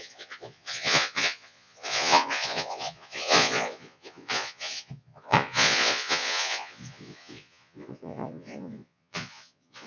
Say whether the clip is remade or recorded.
remade